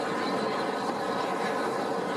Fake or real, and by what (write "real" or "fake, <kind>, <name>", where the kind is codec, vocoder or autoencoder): real